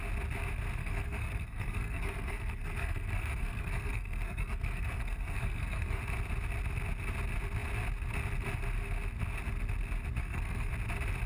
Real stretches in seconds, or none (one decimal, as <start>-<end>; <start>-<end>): 0.0-0.8; 6.0-10.2; 10.7-11.3